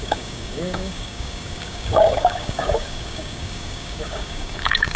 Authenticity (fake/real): fake